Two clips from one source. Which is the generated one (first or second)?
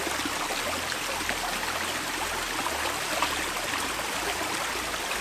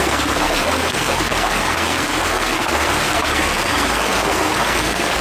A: second